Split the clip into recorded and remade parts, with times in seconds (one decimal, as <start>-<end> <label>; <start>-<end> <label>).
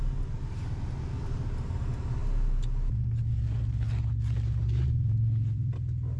0.0-6.2 recorded